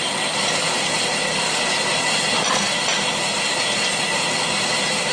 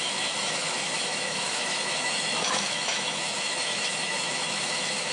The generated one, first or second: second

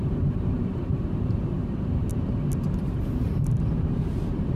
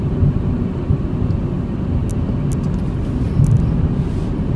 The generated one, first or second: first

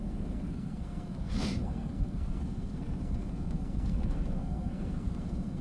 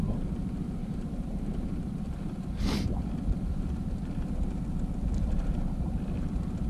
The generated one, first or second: first